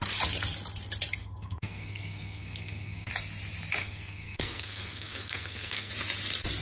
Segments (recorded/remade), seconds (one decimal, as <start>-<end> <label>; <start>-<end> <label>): 0.0-1.2 recorded; 1.2-3.1 remade; 3.1-3.8 recorded; 3.8-5.9 remade; 5.9-6.6 recorded